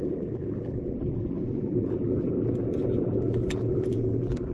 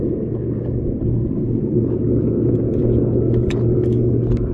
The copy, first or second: first